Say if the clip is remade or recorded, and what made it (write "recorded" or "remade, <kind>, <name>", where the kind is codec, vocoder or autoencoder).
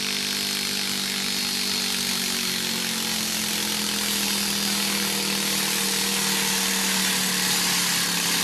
recorded